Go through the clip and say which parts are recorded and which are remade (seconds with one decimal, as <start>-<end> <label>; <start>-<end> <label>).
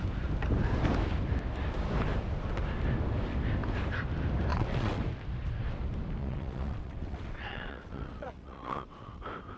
0.0-4.5 recorded; 4.5-5.0 remade; 5.0-6.2 recorded; 6.2-9.2 remade; 9.2-9.6 recorded